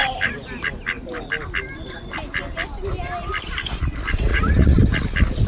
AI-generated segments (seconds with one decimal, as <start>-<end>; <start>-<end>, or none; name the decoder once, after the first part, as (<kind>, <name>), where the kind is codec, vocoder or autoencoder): 4.3-4.8 (vocoder, Vocos)

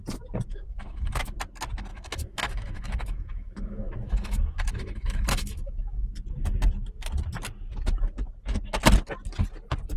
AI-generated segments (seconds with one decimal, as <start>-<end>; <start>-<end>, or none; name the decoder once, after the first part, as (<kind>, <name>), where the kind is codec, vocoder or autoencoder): 0.5-1.2 (autoencoder, DAC-VAE); 1.9-6.1

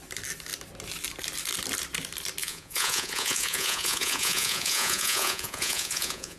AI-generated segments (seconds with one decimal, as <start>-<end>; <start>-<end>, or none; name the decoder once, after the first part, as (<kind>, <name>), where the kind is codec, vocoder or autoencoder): 2.4-6.4 (vocoder, Vocos)

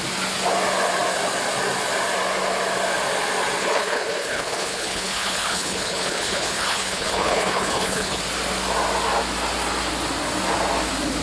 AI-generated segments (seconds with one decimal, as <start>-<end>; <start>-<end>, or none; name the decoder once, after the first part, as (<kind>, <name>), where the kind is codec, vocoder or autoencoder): 3.6-8.2 (codec, HILCodec)

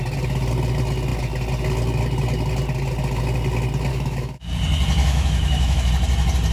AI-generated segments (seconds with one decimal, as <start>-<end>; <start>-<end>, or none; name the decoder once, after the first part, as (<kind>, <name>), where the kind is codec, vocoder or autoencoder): 3.9-4.5 (autoencoder, DAC-VAE); 5.0-5.9